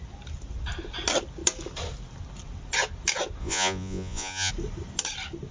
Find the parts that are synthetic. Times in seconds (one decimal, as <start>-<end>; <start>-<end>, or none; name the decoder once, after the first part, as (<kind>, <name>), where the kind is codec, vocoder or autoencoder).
3.4-4.5 (vocoder, Vocos)